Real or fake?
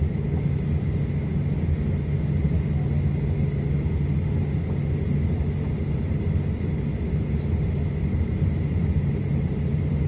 real